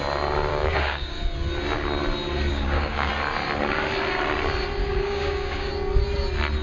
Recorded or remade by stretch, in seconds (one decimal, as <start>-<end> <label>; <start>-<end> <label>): 0.0-0.5 recorded; 0.5-1.2 remade; 1.2-2.5 recorded; 2.5-3.1 remade; 3.1-4.8 recorded; 4.8-5.7 remade; 5.7-6.6 recorded